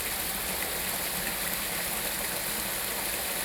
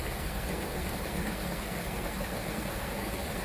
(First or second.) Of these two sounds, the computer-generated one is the second